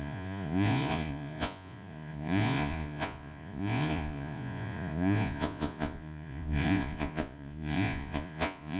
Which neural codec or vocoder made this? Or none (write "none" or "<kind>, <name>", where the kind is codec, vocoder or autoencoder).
vocoder, Vocos